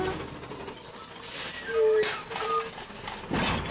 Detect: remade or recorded recorded